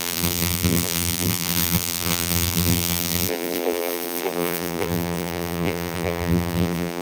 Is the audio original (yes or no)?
no